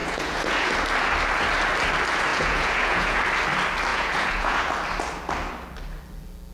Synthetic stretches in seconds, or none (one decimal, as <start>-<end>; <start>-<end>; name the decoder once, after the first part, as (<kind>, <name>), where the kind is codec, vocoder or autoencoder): 0.0-0.7 (vocoder, Vocos); 2.3-3.2; 3.9-4.7